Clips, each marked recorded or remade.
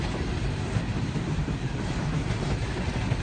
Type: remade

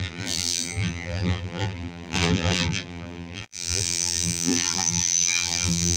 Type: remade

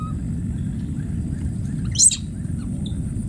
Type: recorded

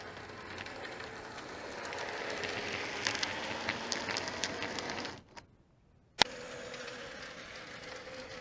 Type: recorded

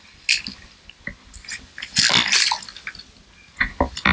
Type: recorded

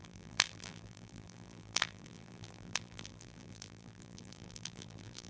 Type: remade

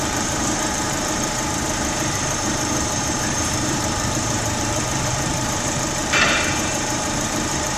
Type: remade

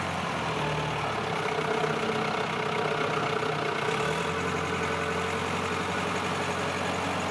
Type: recorded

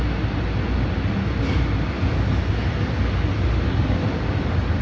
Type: recorded